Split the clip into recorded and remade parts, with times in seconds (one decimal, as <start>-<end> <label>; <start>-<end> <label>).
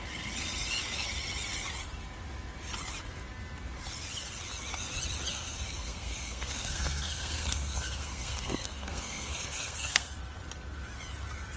0.0-5.3 recorded; 5.3-10.1 remade; 10.1-11.6 recorded